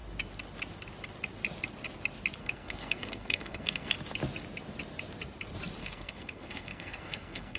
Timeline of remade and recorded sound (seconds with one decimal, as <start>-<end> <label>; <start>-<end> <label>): 0.0-2.4 recorded; 2.4-3.9 remade; 3.9-5.8 recorded; 5.8-7.6 remade

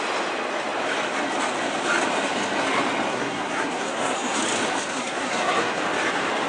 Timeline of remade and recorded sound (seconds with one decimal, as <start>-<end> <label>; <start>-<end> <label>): 0.0-3.1 recorded; 3.1-4.4 remade; 4.4-4.9 recorded; 4.9-5.8 remade; 5.8-6.5 recorded

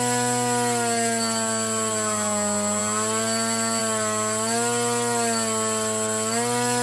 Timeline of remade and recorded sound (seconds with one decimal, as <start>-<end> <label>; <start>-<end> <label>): 0.0-6.8 recorded

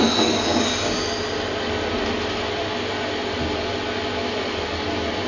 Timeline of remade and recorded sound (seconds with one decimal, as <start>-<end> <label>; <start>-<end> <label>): 0.0-5.3 recorded

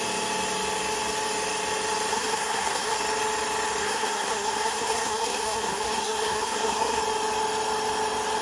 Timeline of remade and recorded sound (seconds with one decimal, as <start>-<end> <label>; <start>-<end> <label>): 0.0-2.1 recorded; 2.1-3.0 remade; 3.0-3.8 recorded; 3.8-7.0 remade; 7.0-8.4 recorded

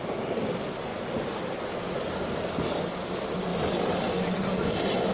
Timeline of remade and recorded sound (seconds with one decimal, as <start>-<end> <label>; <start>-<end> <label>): 0.0-5.1 recorded

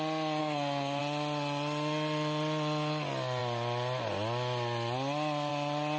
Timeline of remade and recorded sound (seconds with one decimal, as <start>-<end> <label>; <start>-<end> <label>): 0.0-0.4 recorded; 0.4-1.0 remade; 1.0-6.0 recorded

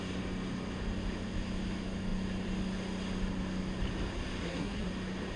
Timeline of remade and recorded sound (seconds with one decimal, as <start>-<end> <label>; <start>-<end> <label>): 0.0-4.4 recorded; 4.4-4.9 remade; 4.9-5.4 recorded